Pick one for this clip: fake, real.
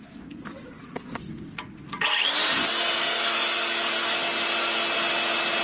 real